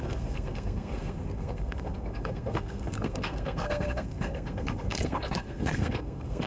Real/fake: fake